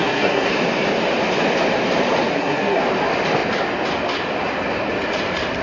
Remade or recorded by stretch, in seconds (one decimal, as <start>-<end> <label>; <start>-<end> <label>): 0.0-0.5 remade; 0.5-2.3 recorded; 2.3-2.8 remade; 2.8-5.6 recorded